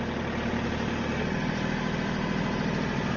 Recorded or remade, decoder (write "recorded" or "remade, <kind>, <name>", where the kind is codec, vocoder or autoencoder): recorded